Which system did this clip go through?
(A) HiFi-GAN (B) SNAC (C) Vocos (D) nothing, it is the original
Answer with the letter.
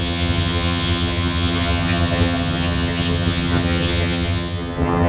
A